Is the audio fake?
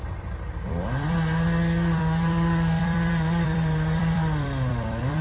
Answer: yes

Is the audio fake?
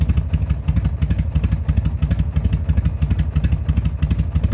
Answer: no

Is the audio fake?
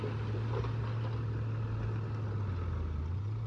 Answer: no